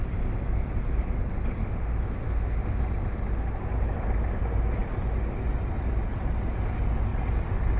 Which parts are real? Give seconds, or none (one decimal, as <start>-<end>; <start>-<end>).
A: 0.0-1.6; 2.8-7.8